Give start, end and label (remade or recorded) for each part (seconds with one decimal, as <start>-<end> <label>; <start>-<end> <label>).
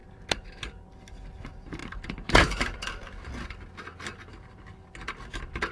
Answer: 0.0-5.7 recorded